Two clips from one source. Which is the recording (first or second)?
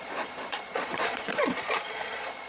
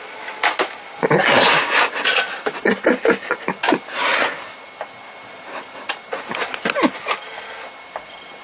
second